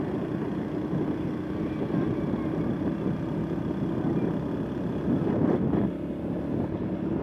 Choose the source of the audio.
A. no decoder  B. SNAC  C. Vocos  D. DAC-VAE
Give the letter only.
A